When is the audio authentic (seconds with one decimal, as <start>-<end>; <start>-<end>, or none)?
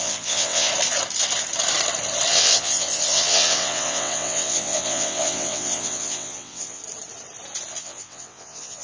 0.7-2.3; 6.8-7.8